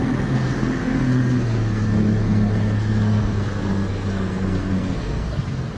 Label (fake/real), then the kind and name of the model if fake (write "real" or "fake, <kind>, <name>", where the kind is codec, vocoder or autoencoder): fake, codec, SNAC